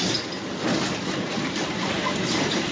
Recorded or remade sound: recorded